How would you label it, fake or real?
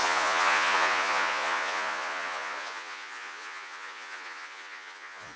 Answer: fake